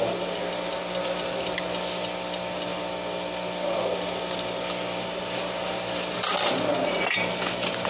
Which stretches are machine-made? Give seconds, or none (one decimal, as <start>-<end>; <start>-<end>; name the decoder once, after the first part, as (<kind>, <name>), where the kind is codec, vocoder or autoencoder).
none